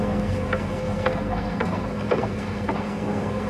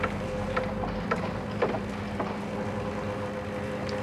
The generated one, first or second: first